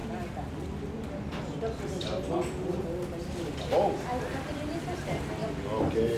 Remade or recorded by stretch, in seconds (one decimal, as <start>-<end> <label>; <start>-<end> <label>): 0.0-6.2 recorded